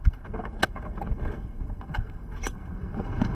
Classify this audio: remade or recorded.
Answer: remade